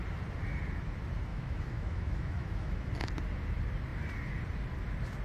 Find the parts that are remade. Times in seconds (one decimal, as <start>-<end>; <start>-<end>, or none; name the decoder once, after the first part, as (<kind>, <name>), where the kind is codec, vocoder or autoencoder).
1.3-2.9 (autoencoder, DAC-VAE)